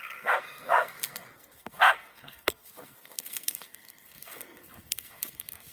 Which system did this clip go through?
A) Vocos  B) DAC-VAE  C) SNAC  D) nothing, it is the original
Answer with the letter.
C